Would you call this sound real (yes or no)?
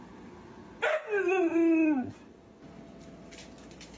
yes